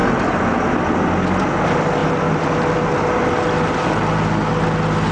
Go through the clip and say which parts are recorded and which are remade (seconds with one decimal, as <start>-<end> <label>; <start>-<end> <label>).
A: 0.0-5.1 recorded